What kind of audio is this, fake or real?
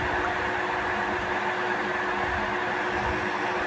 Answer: real